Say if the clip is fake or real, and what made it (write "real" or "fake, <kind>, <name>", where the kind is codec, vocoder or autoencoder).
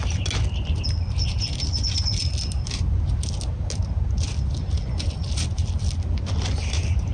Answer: real